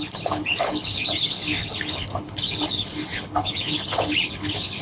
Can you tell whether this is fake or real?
fake